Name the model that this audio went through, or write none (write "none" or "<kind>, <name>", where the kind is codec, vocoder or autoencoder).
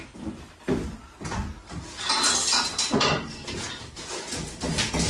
none